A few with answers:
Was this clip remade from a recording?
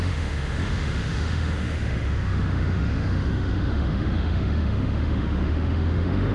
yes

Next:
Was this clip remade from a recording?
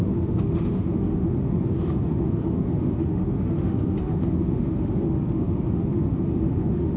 yes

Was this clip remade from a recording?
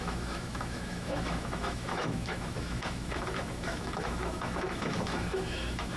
yes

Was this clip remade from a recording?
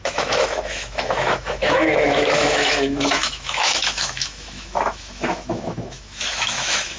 yes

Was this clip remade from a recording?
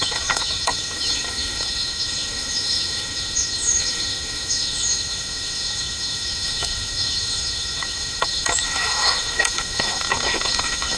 yes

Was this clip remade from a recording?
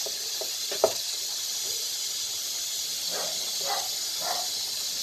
no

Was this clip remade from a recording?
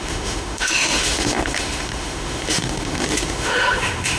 yes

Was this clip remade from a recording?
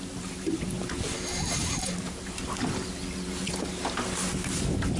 no